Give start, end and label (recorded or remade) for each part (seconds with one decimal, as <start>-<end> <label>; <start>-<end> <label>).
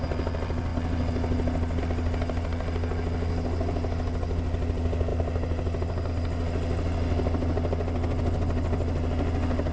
0.0-9.7 recorded